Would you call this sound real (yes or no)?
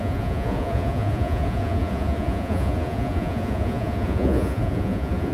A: no